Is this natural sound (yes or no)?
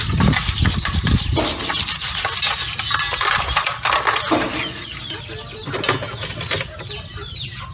yes